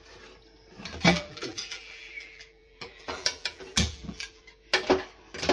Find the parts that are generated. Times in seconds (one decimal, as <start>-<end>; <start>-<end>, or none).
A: 1.1-4.4